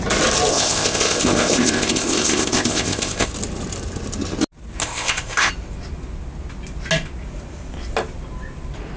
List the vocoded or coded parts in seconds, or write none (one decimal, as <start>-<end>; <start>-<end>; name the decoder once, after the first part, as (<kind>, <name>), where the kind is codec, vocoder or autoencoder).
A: 0.5-3.3 (codec, ZipCodec); 4.8-5.5